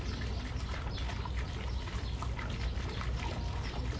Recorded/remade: recorded